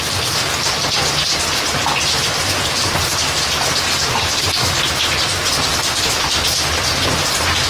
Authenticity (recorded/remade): recorded